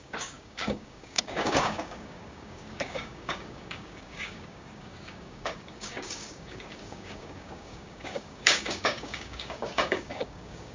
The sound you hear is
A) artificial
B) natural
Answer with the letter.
A